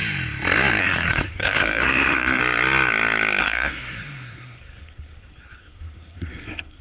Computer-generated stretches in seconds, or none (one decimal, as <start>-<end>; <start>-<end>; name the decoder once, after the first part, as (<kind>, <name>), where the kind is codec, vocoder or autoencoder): 0.8-2.4 (codec, SNAC); 3.4-6.8